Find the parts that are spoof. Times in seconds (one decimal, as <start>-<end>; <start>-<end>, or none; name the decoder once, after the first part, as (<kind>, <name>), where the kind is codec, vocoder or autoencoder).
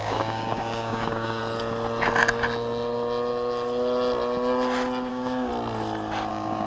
0.0-1.4 (codec, DAC); 5.1-5.5; 6.3-6.7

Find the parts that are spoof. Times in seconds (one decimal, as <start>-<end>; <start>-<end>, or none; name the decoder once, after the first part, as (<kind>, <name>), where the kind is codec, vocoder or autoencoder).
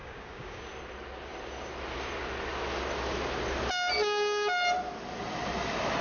0.0-0.6 (codec, DAC)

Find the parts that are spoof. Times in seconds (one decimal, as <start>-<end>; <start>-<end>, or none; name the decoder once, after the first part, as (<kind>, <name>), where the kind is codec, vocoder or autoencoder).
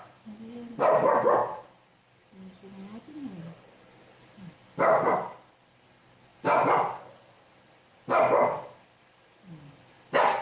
none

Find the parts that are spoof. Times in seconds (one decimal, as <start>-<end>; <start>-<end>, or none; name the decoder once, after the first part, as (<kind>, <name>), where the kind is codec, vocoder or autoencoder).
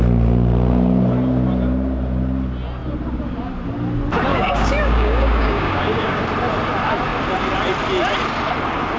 4.3-6.2 (codec, DAC)